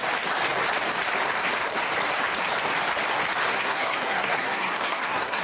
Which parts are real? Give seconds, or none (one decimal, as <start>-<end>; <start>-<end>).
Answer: 0.0-3.4